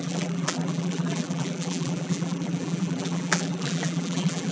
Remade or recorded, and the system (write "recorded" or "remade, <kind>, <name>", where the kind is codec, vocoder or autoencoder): remade, vocoder, BigVGAN v2